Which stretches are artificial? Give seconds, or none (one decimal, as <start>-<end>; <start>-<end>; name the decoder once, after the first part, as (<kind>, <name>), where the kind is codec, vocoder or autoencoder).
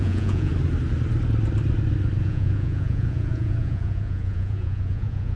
0.0-0.5 (vocoder, Vocos); 2.2-5.4